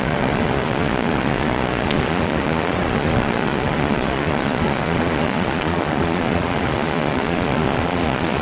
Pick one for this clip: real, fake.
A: fake